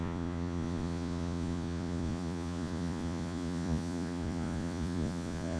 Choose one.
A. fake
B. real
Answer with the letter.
A